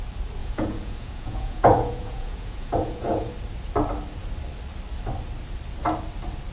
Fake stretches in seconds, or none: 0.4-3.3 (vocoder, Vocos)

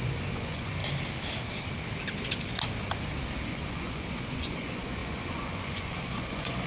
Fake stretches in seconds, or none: 0.0-0.8 (vocoder, Vocos); 3.5-6.7

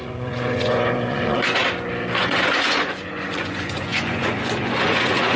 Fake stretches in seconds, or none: 0.0-1.6 (vocoder, Vocos); 2.2-5.4

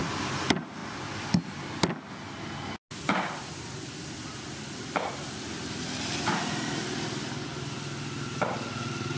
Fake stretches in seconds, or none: none

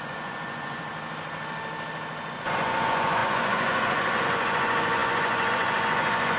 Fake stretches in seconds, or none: 0.0-0.9 (vocoder, Vocos); 2.3-6.4

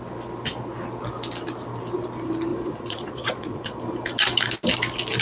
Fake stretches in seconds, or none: 2.5-3.8 (vocoder, Vocos)

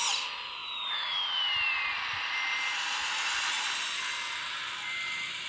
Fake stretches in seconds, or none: none